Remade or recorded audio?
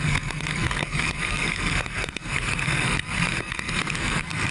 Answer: remade